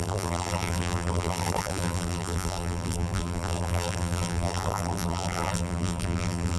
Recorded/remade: remade